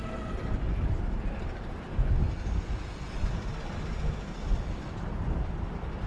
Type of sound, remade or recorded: recorded